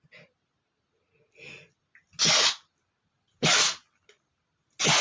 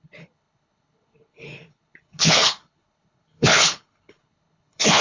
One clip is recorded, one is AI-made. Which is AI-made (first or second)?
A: second